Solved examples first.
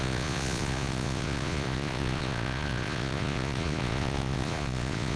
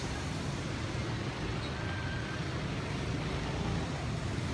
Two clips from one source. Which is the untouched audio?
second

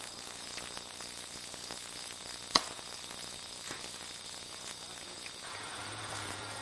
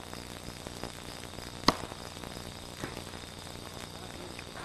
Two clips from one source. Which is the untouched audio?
second